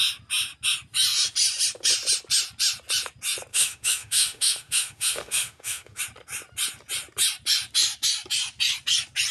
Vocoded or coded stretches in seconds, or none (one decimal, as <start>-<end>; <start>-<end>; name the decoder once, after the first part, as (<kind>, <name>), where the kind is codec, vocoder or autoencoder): 3.5-6.0 (autoencoder, DAC-VAE)

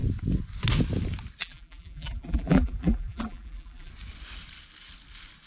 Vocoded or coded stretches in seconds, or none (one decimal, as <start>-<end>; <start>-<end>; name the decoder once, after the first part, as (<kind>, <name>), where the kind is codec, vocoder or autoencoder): 1.4-3.9 (vocoder, BigVGAN v2)